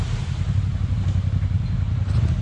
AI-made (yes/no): no